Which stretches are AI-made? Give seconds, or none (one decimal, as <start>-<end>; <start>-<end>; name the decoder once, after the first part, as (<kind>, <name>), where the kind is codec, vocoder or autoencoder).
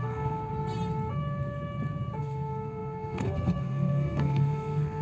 0.0-0.5 (codec, SNAC); 2.2-5.0